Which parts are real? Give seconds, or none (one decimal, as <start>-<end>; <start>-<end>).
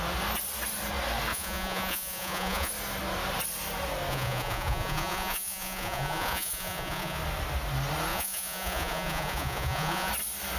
0.0-1.3; 2.7-4.1; 7.2-8.1; 10.1-10.6